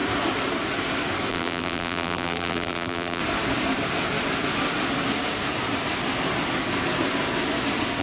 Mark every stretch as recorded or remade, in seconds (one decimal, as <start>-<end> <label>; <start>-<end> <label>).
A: 0.0-1.3 recorded; 1.3-3.2 remade; 3.2-8.0 recorded